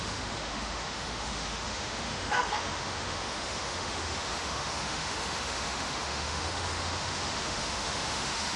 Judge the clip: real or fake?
fake